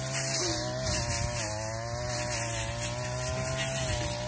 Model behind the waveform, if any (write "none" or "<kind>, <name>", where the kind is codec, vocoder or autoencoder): none